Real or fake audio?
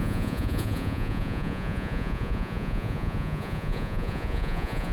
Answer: fake